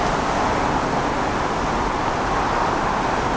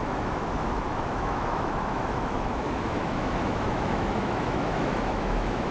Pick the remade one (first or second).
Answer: second